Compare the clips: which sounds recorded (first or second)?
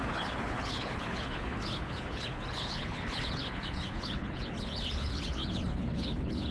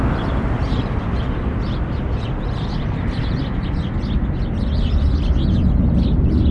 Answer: second